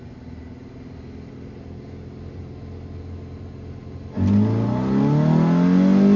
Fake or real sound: real